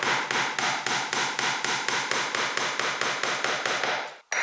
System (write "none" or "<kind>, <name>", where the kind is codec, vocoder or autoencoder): none